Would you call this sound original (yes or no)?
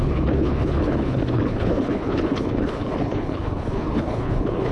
no